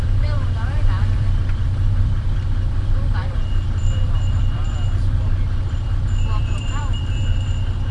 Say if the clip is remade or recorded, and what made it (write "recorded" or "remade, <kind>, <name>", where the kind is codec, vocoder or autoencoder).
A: remade, vocoder, BigVGAN v2